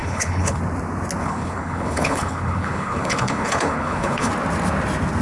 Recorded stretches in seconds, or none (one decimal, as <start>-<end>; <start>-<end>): 0.6-1.2; 4.3-5.2